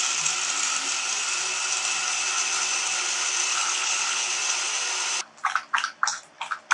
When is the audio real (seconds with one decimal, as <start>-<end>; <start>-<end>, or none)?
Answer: 0.0-3.5; 4.3-6.7